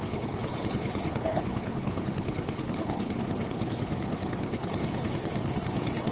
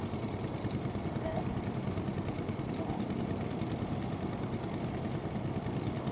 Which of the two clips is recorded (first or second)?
second